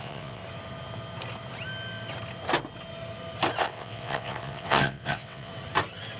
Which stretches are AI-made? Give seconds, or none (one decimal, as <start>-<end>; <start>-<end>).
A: 0.0-0.4; 3.6-5.5